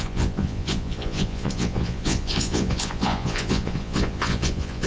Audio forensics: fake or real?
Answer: fake